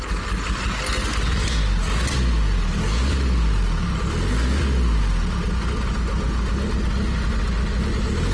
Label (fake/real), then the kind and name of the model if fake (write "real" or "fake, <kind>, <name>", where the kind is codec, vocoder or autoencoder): real